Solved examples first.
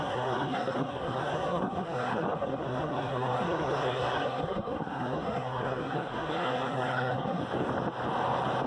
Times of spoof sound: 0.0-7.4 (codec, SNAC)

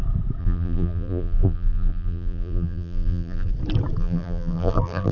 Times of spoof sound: 0.4-3.5 (vocoder, BigVGAN v2); 4.0-5.1

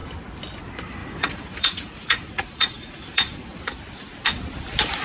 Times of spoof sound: 1.0-3.6 (vocoder, Vocos)

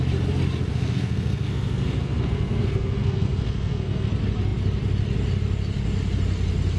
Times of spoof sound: 0.7-4.1 (codec, SNAC)

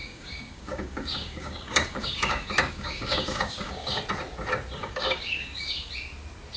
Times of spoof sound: 0.0-4.0 (codec, DAC); 4.8-5.9

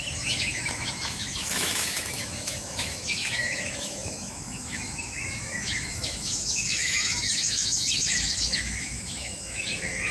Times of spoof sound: 0.0-10.1 (autoencoder, DAC-VAE)

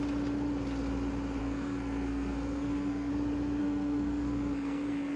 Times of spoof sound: 1.4-3.1 (codec, SNAC); 3.6-5.2

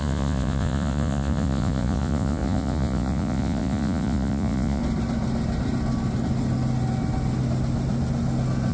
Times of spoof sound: 0.0-4.8 (vocoder, Vocos)